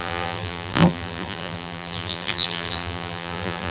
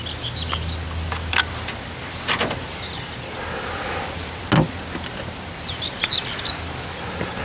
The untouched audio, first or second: second